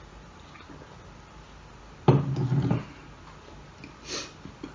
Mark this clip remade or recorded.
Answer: recorded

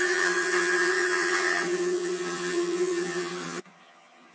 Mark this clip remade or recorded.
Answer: remade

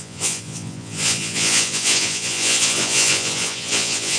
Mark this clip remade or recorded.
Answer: remade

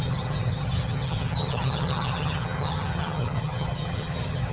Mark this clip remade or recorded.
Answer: remade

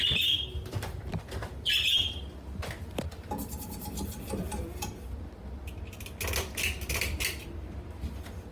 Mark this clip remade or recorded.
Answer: remade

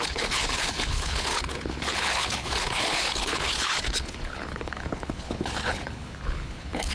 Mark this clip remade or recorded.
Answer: remade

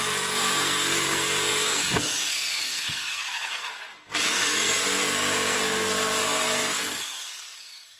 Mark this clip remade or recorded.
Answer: remade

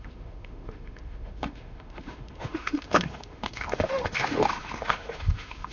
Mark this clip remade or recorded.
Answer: remade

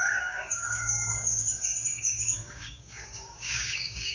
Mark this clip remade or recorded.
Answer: remade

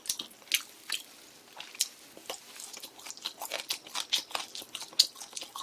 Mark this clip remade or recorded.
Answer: recorded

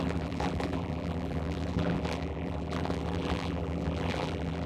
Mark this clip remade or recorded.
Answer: remade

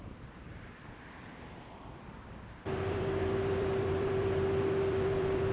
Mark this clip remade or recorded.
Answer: remade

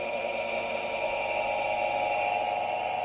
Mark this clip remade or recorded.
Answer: recorded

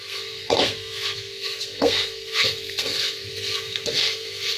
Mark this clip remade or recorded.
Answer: remade